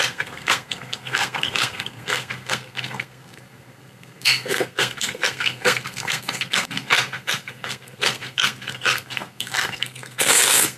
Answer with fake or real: fake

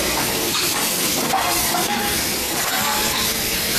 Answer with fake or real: fake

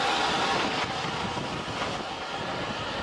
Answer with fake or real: real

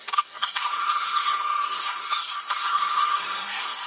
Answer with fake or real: fake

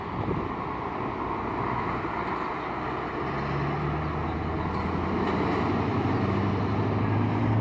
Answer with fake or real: real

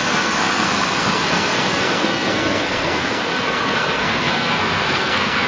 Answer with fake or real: fake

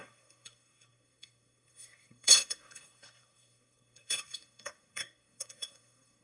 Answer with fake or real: fake